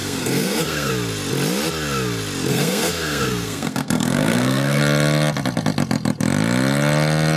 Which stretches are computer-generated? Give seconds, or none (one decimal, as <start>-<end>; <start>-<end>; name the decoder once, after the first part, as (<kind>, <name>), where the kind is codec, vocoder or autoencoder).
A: 0.0-0.9 (codec, SNAC); 2.5-4.8